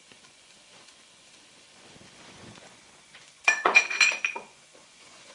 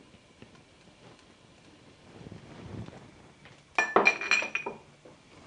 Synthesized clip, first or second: first